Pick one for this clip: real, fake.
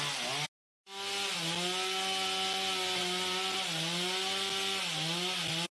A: real